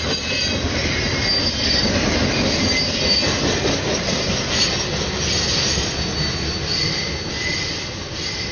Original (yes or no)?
yes